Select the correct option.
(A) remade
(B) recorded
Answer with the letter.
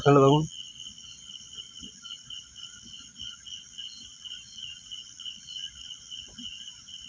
A